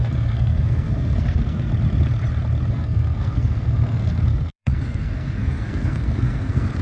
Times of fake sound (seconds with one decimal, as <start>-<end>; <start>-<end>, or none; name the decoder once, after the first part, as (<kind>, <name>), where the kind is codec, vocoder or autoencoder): 0.0-1.7 (codec, SNAC); 2.7-6.8